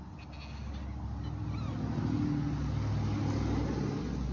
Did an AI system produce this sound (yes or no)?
no